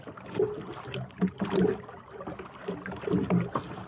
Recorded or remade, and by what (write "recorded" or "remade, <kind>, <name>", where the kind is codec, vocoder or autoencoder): recorded